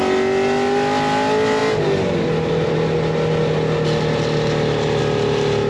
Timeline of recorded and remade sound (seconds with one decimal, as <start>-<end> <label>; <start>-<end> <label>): 0.0-5.7 recorded